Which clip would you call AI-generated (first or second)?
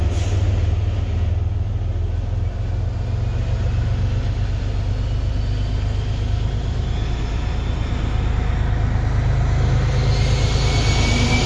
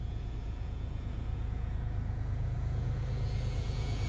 second